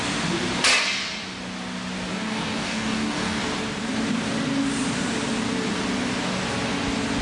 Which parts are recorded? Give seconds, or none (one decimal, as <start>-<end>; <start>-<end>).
0.0-2.1; 3.4-7.2